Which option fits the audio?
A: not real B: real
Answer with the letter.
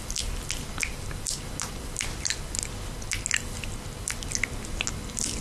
B